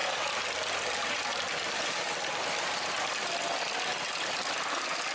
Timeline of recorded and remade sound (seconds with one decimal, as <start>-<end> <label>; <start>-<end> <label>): 0.0-3.1 remade; 3.1-5.1 recorded